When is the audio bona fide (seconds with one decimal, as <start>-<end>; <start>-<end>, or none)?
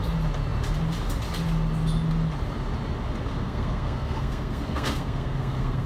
0.0-3.4